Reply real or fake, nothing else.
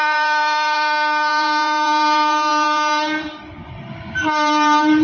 fake